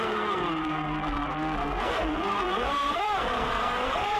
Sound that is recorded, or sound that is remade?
remade